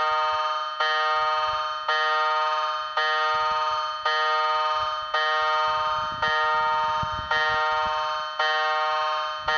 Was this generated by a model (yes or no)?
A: no